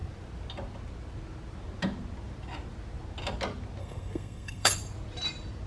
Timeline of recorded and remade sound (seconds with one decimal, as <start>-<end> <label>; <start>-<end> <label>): 0.0-3.8 recorded; 3.8-4.7 remade; 4.7-5.7 recorded